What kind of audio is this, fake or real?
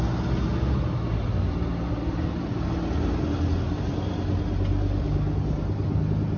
real